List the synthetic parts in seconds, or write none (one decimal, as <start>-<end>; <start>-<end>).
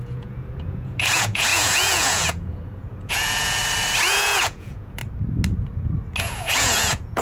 0.0-3.6; 4.1-5.0; 6.2-7.2